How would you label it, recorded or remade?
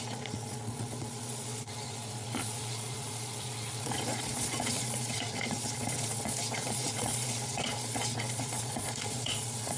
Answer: remade